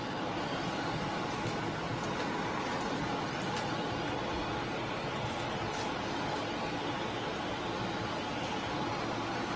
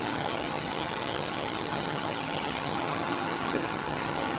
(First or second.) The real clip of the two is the first